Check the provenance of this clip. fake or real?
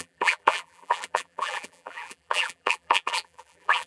fake